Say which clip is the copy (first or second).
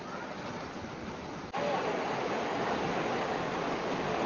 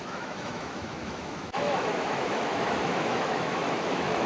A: second